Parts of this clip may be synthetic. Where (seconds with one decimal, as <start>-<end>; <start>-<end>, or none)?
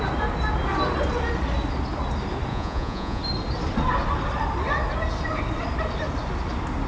2.5-3.2